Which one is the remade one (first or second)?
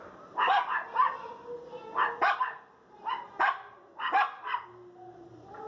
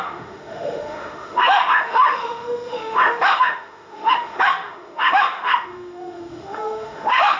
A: second